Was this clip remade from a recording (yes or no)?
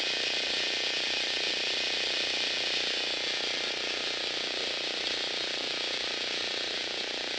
no